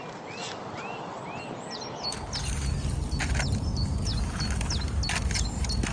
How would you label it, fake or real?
real